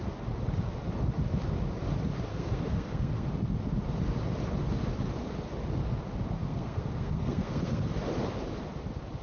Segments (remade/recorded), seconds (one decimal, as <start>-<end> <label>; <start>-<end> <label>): 0.0-2.3 recorded; 2.3-3.3 remade; 3.3-6.4 recorded; 6.4-7.8 remade; 7.8-9.2 recorded